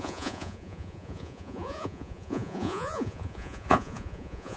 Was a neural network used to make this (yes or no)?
yes